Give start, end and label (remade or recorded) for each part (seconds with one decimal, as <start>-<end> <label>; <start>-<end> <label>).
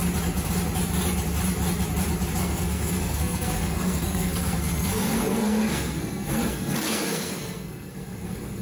0.0-2.4 recorded; 2.4-8.6 remade